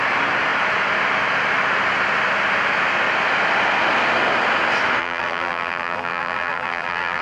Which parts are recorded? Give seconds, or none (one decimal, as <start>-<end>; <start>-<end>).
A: 0.0-5.0